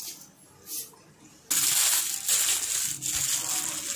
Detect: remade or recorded recorded